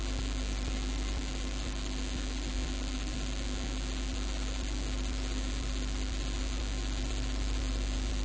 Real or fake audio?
real